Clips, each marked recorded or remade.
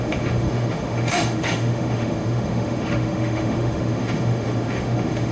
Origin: remade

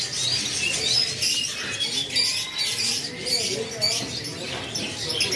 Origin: recorded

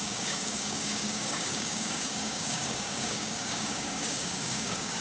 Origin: remade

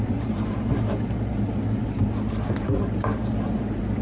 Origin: remade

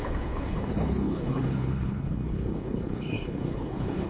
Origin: remade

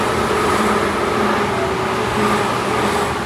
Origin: recorded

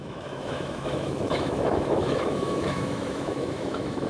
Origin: remade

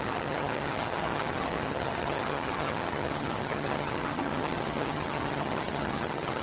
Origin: remade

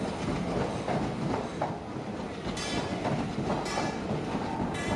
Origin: recorded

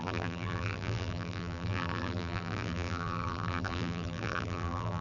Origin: remade